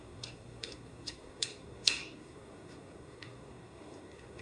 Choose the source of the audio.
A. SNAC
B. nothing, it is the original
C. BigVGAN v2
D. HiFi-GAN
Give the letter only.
A